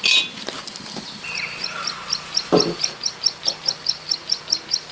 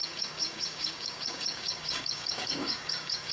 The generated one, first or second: second